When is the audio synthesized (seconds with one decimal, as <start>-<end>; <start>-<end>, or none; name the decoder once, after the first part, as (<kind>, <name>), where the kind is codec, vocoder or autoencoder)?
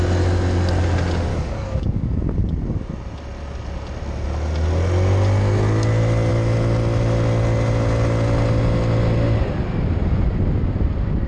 1.3-2.2 (codec, DAC)